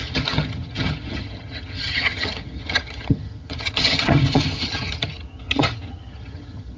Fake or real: fake